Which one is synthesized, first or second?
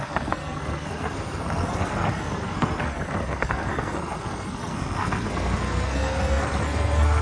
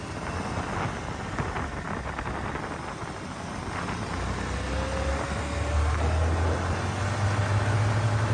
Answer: first